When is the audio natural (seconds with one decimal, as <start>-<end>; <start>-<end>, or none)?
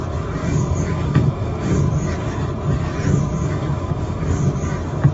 0.0-0.4; 1.8-3.4; 4.3-5.1